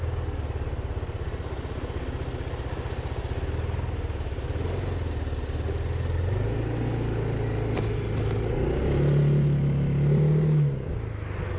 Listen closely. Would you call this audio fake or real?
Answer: real